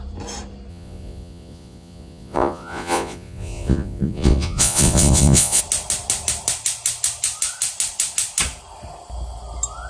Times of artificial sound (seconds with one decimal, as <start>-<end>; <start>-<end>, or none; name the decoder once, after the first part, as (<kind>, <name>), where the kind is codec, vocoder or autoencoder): 0.7-5.6 (vocoder, Vocos)